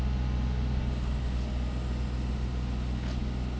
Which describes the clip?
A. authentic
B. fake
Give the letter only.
A